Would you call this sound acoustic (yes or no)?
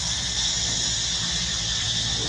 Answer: no